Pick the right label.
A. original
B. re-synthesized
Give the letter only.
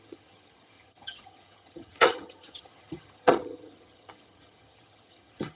B